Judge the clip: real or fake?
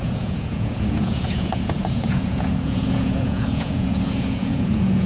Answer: fake